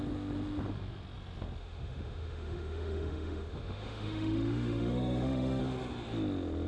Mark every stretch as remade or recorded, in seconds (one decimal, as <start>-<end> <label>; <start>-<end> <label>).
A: 0.0-1.6 recorded; 1.6-5.6 remade; 5.6-6.7 recorded